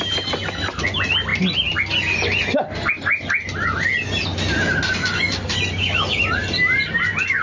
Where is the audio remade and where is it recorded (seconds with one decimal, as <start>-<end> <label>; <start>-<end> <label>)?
0.0-7.4 recorded